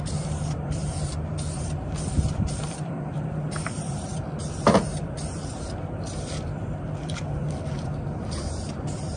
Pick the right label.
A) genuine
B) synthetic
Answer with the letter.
B